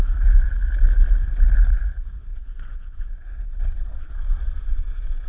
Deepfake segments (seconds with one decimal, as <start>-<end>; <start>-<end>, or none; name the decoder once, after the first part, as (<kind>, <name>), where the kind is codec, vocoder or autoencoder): 2.3-5.3 (vocoder, Vocos)